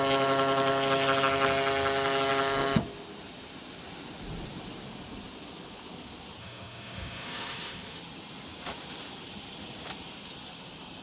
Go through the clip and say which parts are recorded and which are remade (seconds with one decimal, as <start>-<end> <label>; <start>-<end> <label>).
0.0-6.4 recorded; 6.4-8.0 remade; 8.0-11.0 recorded